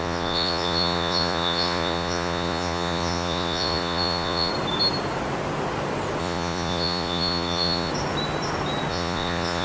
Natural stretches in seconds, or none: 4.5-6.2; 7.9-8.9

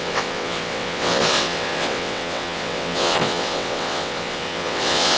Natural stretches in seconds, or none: none

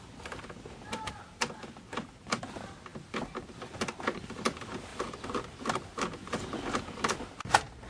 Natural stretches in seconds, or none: 0.0-7.9

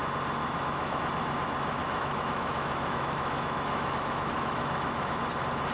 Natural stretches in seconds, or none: 0.0-0.4; 1.0-1.8; 5.2-5.7

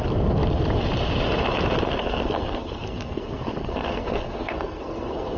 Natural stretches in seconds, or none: 0.0-2.0

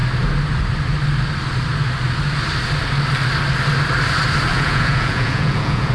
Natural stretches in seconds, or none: 0.0-4.5

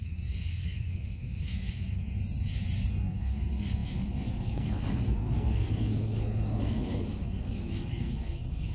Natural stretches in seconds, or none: 2.2-2.9

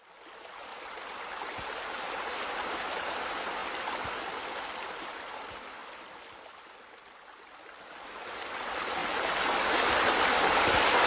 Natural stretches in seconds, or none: 0.0-0.7; 2.4-5.8; 6.8-9.0; 10.1-11.1